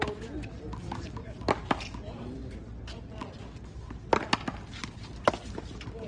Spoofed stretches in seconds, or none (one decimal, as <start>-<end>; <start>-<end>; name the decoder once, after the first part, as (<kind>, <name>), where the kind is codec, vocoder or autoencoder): none